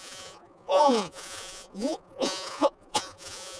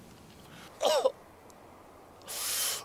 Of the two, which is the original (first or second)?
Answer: second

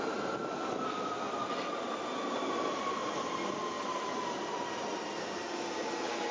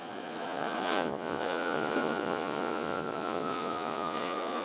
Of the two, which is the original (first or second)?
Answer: first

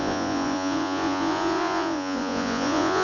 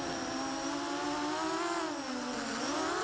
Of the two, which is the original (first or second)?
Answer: second